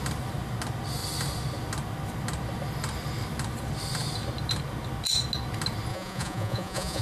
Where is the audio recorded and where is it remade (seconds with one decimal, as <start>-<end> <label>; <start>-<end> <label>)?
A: 0.0-5.9 recorded; 5.9-7.0 remade